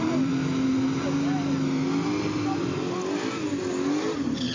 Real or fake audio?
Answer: real